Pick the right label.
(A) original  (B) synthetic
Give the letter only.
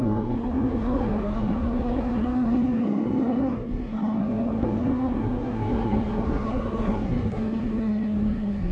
B